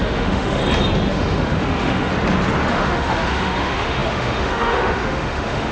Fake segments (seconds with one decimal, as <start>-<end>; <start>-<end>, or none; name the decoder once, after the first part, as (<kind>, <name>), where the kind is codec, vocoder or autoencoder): 0.0-0.6 (autoencoder, DAC-VAE); 1.1-2.1; 2.7-5.7